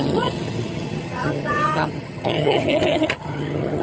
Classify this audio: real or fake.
fake